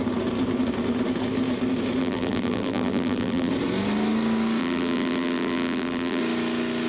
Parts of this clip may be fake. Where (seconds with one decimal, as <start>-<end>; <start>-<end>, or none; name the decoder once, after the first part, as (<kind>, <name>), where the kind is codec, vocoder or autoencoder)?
2.0-3.5 (vocoder, BigVGAN v2); 4.6-6.2